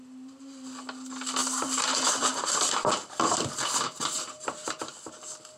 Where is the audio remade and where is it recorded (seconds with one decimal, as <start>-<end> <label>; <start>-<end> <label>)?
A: 0.0-1.4 recorded; 1.4-4.8 remade; 4.8-5.6 recorded